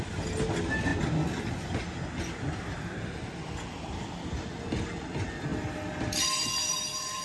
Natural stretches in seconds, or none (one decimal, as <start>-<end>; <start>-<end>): 0.9-2.2; 5.5-6.7